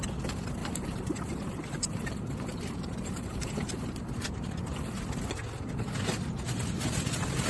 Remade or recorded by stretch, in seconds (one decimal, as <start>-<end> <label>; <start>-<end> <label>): 0.0-0.6 recorded; 0.6-5.1 remade; 5.1-7.5 recorded